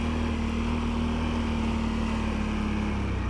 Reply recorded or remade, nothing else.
recorded